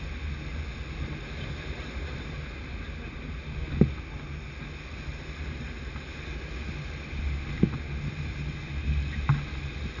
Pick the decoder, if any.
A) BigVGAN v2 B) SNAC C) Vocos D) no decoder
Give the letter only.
D